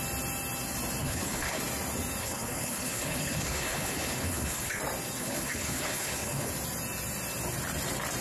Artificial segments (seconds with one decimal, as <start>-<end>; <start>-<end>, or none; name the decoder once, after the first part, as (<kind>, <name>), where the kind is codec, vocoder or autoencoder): 1.0-1.6 (codec, HILCodec); 2.2-4.8; 5.2-6.5